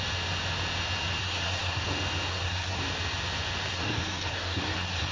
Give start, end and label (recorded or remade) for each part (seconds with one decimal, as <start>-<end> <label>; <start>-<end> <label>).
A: 0.0-1.2 recorded; 1.2-1.8 remade; 1.8-2.3 recorded; 2.3-2.8 remade; 2.8-3.7 recorded; 3.7-5.1 remade